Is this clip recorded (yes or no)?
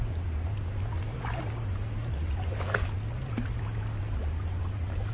yes